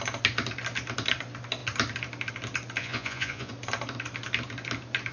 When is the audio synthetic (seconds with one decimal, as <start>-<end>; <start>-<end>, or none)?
2.8-3.5